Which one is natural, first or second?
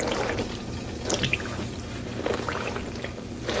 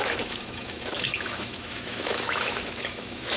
first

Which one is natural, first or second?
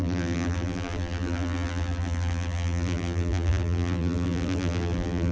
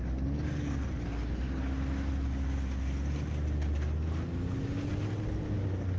second